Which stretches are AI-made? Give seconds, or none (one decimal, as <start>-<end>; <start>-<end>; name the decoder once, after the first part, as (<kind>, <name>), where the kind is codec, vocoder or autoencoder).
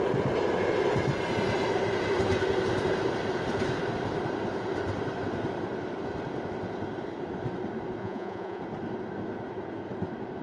8.0-8.6 (vocoder, Vocos)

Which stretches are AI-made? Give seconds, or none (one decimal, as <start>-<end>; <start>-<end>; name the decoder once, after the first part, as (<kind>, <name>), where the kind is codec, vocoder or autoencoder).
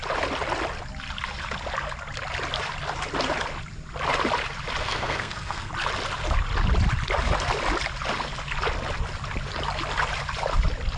4.8-5.7 (codec, SNAC)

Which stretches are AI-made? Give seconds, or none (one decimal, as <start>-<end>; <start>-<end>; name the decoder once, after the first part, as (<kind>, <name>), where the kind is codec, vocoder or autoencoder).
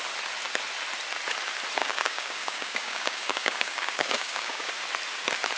1.8-4.7 (codec, DAC)